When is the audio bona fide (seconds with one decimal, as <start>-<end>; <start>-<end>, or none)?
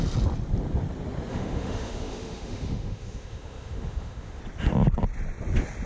0.0-1.3; 4.4-5.9